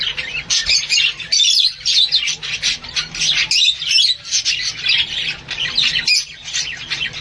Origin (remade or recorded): recorded